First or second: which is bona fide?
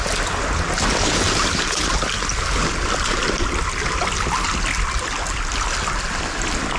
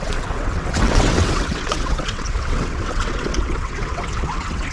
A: first